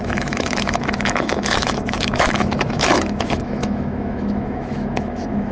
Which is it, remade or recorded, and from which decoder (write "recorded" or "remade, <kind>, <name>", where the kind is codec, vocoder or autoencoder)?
remade, autoencoder, DAC-VAE